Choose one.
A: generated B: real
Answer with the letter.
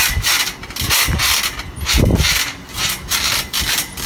B